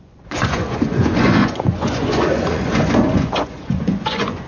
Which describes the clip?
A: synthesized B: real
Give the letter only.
A